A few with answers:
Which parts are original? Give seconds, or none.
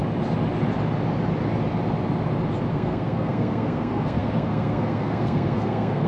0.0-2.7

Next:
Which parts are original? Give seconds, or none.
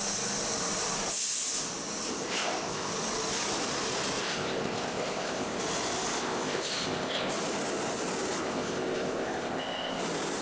0.0-2.1; 2.9-4.2; 5.6-6.2; 7.3-8.4; 10.0-10.4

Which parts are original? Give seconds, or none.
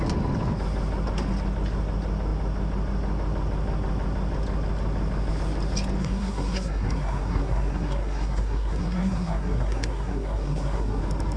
0.0-6.0; 11.0-11.4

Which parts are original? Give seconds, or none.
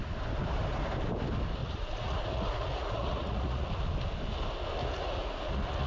0.0-1.6; 3.7-4.8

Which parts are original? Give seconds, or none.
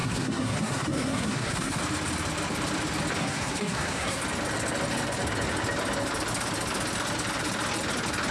1.8-3.2; 4.2-8.3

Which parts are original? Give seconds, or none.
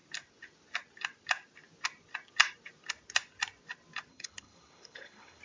0.0-4.1